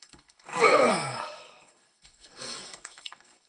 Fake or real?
fake